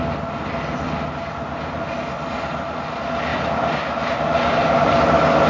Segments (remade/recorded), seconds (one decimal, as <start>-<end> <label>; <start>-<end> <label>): 0.0-3.3 recorded; 3.3-5.0 remade; 5.0-5.5 recorded